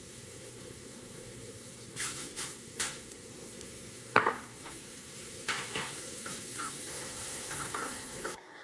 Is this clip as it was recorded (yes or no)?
no